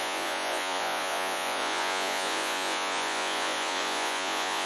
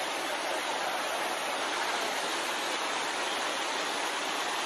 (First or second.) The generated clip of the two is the first